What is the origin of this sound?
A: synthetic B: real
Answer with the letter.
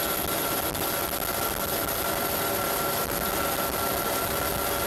B